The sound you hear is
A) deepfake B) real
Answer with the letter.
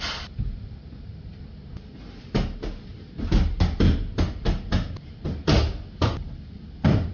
B